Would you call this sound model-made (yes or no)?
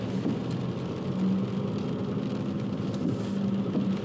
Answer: no